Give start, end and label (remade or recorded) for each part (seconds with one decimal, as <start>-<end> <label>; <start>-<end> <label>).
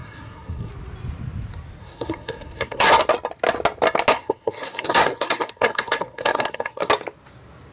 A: 0.0-0.7 remade; 0.7-1.8 recorded; 1.8-2.9 remade; 2.9-4.1 recorded; 4.1-6.9 remade; 6.9-7.7 recorded